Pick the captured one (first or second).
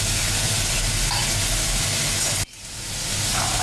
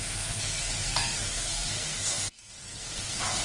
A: first